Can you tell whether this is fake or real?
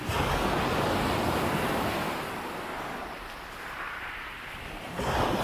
real